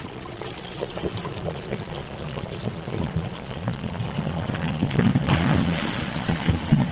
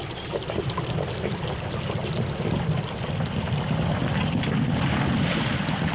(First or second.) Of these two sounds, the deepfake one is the first